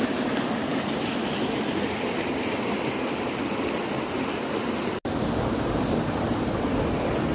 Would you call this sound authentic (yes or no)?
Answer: yes